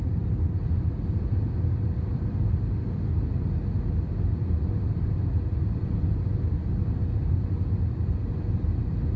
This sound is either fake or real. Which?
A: real